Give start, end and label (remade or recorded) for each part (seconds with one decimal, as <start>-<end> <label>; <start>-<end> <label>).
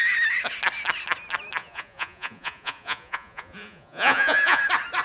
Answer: 0.0-1.6 recorded; 1.6-4.6 remade; 4.6-5.0 recorded